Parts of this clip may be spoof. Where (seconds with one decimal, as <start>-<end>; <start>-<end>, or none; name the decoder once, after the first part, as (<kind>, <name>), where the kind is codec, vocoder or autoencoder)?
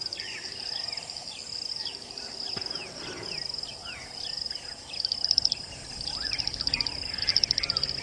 1.7-8.0 (vocoder, BigVGAN v2)